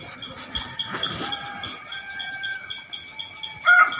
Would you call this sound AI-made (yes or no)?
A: no